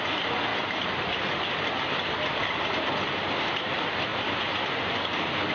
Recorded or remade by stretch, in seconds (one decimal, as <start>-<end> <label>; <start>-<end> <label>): 0.0-0.5 recorded; 0.5-1.5 remade; 1.5-5.5 recorded